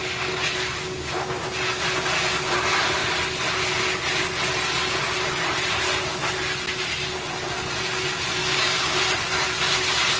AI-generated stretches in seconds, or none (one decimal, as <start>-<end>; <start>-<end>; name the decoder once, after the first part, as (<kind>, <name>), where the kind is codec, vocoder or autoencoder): 8.4-9.0 (codec, DAC)